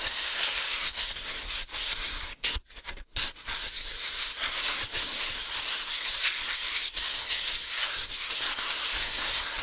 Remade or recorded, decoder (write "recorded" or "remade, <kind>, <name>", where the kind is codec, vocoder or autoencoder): remade, codec, SNAC